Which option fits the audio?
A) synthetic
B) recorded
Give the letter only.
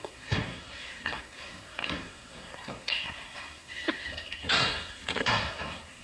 A